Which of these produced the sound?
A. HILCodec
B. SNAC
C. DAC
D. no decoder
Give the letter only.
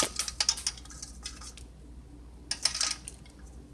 D